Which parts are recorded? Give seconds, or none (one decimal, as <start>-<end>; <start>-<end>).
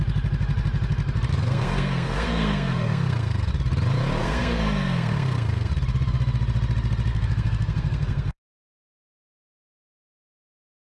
0.0-1.3; 3.5-4.2; 5.7-7.1; 8.8-10.9